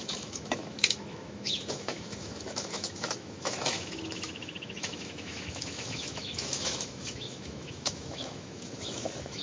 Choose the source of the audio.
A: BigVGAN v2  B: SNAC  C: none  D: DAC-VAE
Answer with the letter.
D